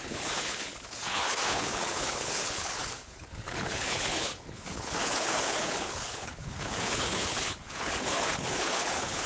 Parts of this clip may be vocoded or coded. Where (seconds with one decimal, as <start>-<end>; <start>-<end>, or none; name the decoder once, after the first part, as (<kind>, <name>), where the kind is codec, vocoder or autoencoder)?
0.0-9.3 (codec, HILCodec)